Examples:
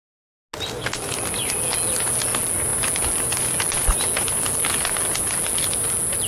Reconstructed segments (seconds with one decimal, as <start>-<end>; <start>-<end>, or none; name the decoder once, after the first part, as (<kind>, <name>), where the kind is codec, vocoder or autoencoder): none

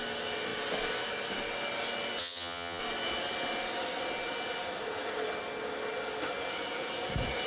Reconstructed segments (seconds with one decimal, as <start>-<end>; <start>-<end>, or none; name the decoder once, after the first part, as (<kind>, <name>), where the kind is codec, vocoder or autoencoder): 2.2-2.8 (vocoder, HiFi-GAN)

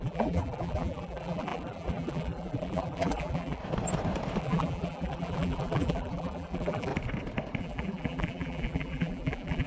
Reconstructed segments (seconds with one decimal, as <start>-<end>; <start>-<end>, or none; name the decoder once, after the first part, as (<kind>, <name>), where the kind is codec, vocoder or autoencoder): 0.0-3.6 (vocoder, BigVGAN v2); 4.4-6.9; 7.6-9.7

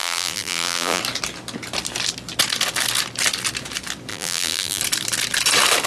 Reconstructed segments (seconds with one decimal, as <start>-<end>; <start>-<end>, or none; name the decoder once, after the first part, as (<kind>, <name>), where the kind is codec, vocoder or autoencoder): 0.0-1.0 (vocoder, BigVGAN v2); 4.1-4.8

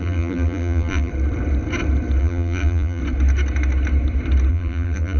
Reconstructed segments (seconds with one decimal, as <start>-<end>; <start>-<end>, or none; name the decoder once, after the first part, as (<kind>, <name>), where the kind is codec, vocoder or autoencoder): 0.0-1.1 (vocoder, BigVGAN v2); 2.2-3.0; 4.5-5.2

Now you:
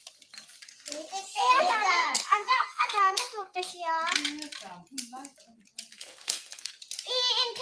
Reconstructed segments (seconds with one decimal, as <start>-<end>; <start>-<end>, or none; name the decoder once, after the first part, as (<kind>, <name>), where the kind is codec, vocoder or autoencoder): 1.3-3.7 (codec, SNAC); 5.9-6.8

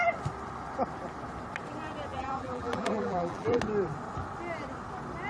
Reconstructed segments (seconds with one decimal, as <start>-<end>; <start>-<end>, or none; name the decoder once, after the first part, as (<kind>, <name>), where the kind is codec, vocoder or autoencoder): 2.1-3.6 (vocoder, BigVGAN v2)

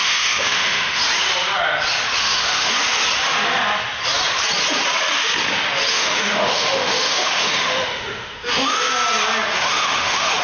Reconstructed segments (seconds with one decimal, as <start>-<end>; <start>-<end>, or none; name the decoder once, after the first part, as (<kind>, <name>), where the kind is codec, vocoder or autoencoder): 0.0-1.0 (autoencoder, DAC-VAE); 2.2-2.7; 5.9-8.9; 9.6-10.4